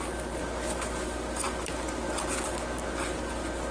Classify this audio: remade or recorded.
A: recorded